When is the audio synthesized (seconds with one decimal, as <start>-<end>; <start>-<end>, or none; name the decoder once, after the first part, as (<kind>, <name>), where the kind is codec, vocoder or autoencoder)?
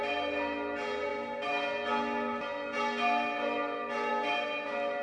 none